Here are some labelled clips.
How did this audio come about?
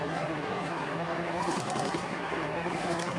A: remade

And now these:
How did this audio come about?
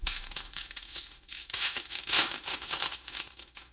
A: remade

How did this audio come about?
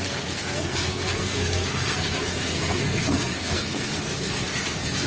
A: remade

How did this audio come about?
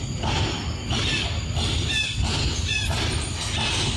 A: recorded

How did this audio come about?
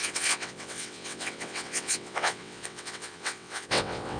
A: remade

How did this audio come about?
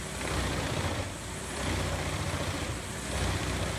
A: remade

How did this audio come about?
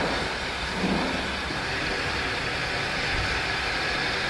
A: recorded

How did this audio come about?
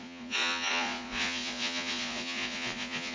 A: remade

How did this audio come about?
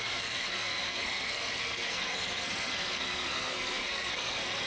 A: remade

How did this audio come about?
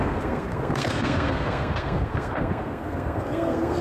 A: remade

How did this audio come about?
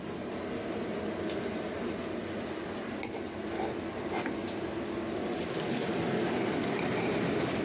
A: recorded